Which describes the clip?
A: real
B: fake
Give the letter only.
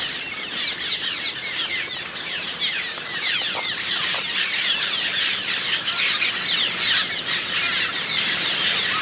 A